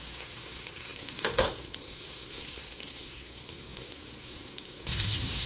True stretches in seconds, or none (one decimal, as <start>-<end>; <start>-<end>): none